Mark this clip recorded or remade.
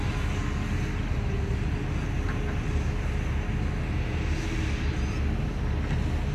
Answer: recorded